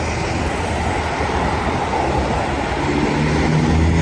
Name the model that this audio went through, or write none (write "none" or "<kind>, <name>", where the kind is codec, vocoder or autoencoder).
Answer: none